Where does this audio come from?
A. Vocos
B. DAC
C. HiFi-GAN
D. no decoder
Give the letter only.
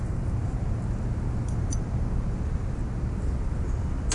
D